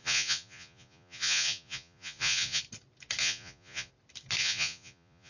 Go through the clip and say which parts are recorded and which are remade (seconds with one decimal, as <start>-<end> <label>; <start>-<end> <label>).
0.0-2.6 remade; 2.6-3.2 recorded; 3.2-3.9 remade; 3.9-4.4 recorded; 4.4-5.3 remade